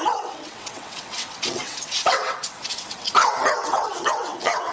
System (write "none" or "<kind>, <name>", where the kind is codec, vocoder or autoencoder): vocoder, WaveNeXt